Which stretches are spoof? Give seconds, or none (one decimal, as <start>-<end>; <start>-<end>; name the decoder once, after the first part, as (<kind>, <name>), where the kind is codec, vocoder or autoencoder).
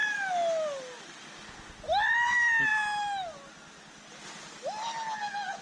none